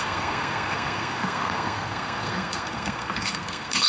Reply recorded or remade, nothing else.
remade